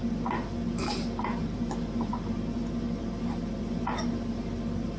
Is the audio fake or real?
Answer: real